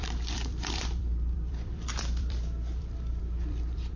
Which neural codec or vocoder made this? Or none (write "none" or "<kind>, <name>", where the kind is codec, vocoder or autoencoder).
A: vocoder, BigVGAN v2